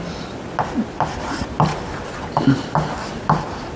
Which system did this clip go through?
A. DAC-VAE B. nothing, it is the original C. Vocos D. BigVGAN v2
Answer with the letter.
B